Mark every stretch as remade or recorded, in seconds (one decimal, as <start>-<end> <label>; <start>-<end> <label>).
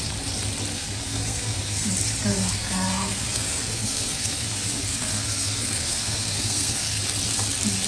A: 0.0-0.7 recorded; 0.7-1.9 remade; 1.9-2.3 recorded; 2.3-7.0 remade; 7.0-7.9 recorded